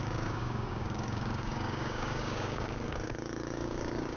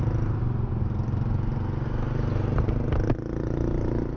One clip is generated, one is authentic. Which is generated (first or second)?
first